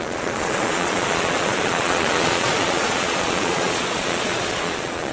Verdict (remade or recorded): remade